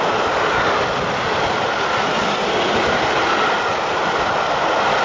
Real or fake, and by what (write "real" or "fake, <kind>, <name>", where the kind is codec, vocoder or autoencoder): real